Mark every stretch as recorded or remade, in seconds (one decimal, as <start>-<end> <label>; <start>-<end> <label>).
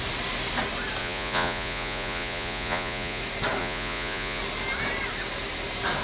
0.0-1.0 recorded; 1.0-3.2 remade; 3.2-3.6 recorded; 3.6-4.4 remade; 4.4-6.0 recorded